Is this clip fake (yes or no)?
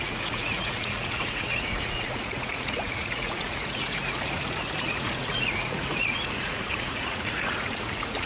yes